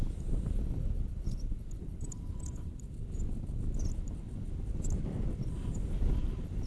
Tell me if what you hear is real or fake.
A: fake